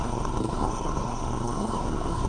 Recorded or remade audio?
remade